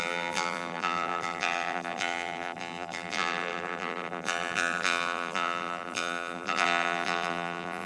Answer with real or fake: fake